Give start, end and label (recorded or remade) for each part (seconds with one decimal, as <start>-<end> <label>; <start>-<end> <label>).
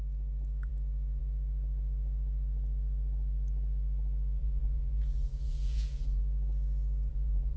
0.0-4.4 recorded; 4.4-6.2 remade; 6.2-7.1 recorded; 7.1-7.6 remade